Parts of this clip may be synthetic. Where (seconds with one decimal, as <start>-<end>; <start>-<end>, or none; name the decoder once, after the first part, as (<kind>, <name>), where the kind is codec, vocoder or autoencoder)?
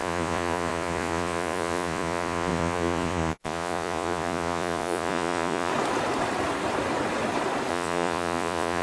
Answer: 0.0-5.7 (vocoder, Vocos); 7.7-8.8